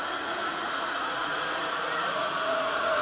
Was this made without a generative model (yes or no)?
no